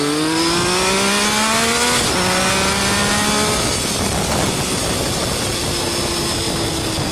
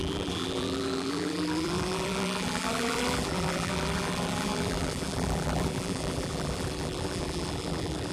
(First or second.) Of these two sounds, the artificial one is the second